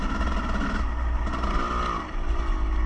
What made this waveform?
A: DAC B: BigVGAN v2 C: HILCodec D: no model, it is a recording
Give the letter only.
D